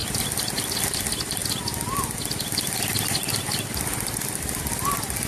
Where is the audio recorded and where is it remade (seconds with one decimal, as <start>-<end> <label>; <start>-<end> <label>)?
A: 0.0-5.3 recorded